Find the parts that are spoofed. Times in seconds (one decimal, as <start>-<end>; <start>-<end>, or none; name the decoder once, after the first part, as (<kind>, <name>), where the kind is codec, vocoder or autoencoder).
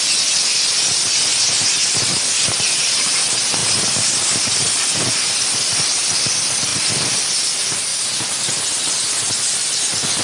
1.3-3.2 (vocoder, BigVGAN v2); 3.6-5.3; 6.7-7.2; 7.9-8.6